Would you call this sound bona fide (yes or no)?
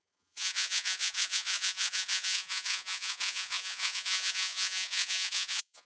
no